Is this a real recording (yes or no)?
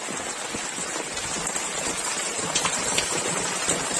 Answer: yes